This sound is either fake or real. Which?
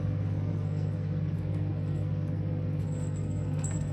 fake